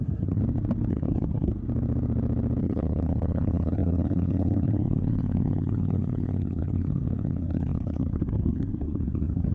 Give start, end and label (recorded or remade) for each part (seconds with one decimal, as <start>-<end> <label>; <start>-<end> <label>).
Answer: 0.0-0.4 remade; 0.4-0.9 recorded; 0.9-1.5 remade; 1.5-2.6 recorded; 2.6-9.5 remade